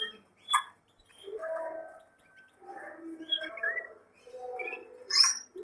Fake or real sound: fake